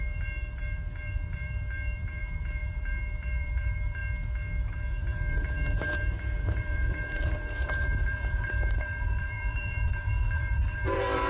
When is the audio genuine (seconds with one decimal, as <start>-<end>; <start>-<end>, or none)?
4.0-4.9

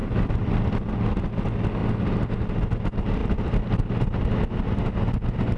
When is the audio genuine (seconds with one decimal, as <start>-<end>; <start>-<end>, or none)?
0.0-1.8; 2.5-3.2; 3.9-5.6

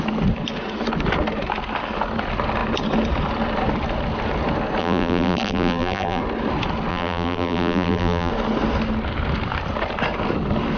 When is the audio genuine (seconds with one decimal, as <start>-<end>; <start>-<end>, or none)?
0.0-4.8; 6.2-6.9; 8.3-10.8

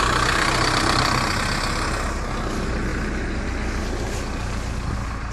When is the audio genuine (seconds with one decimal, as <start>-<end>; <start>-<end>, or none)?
0.0-5.3

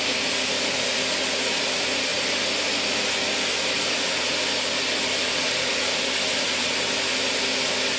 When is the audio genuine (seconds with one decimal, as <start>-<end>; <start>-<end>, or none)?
0.0-8.0

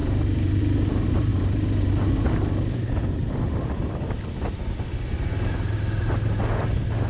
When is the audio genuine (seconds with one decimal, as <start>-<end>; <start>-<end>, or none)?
0.6-1.3; 1.9-7.1